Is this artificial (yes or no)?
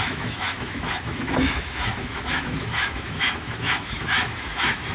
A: yes